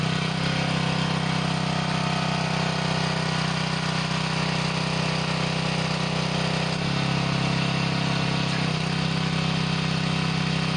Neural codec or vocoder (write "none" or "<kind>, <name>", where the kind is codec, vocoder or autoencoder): none